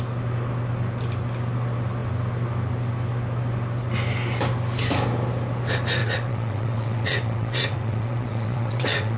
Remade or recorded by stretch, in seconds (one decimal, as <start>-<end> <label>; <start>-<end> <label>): 0.0-6.0 recorded; 6.0-9.2 remade